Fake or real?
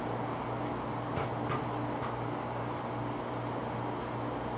real